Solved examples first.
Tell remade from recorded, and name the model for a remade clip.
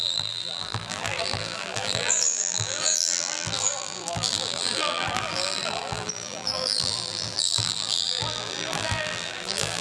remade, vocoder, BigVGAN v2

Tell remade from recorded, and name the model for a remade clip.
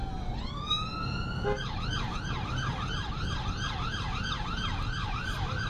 recorded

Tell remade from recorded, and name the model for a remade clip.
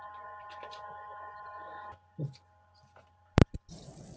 remade, vocoder, BigVGAN v2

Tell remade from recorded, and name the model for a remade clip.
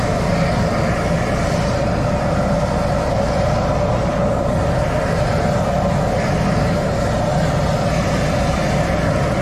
recorded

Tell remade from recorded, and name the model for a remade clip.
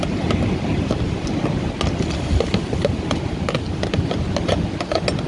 recorded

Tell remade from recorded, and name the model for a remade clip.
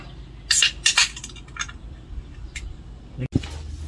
recorded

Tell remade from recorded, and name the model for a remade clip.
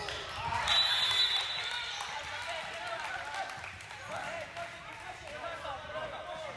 remade, vocoder, BigVGAN v2